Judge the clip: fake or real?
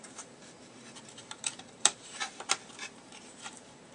fake